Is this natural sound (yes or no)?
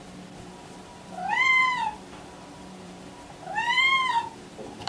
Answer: no